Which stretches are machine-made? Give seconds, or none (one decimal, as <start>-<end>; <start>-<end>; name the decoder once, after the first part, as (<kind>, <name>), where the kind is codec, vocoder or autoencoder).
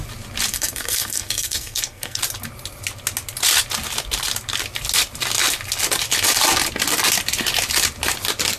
0.5-2.2 (codec, SNAC)